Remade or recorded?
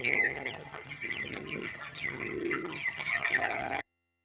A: remade